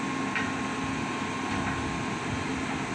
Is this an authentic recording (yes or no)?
yes